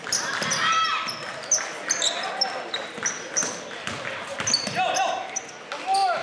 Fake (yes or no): no